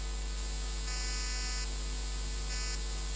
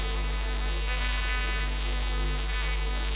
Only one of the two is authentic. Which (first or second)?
first